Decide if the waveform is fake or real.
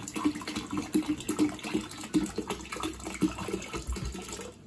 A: real